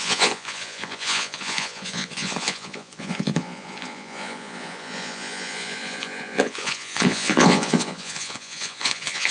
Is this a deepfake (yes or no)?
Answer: yes